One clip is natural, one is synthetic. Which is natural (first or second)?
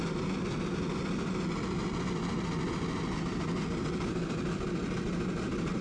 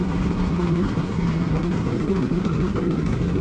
first